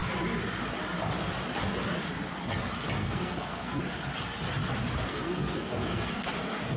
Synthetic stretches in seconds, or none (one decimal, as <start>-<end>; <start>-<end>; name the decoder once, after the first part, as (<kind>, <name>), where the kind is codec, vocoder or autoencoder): 3.0-3.8 (codec, SNAC); 5.1-6.3